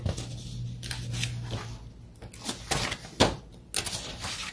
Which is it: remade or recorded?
recorded